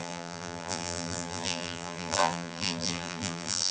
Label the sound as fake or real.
fake